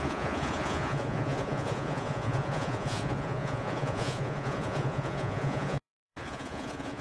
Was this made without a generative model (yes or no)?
no